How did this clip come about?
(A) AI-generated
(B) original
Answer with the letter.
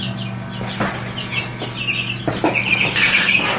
B